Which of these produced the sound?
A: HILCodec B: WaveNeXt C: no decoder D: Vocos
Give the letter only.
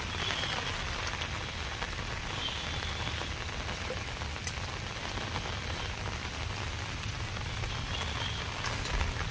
C